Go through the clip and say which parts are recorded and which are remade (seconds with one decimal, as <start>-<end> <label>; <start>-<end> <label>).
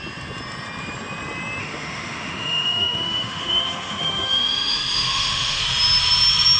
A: 0.0-1.6 recorded; 1.6-5.6 remade; 5.6-6.6 recorded